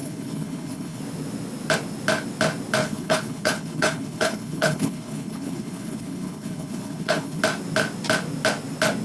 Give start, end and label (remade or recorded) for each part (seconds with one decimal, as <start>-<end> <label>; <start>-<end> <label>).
0.0-1.0 remade; 1.0-2.8 recorded; 2.8-7.4 remade; 7.4-9.0 recorded